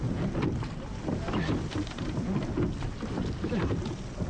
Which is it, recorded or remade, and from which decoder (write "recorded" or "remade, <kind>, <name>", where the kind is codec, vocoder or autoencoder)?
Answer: recorded